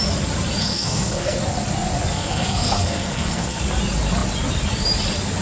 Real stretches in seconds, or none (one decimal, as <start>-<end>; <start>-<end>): 0.0-0.6; 1.4-2.1; 3.6-5.4